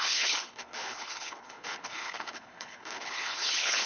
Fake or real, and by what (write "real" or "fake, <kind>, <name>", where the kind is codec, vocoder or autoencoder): fake, codec, HILCodec